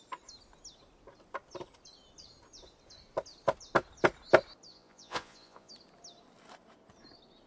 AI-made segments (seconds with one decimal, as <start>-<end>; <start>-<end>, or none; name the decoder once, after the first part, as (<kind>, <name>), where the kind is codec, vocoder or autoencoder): 4.7-5.7 (vocoder, Vocos)